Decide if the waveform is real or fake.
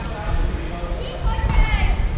real